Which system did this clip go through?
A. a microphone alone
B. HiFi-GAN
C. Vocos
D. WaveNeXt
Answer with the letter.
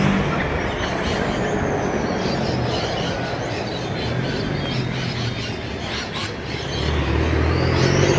A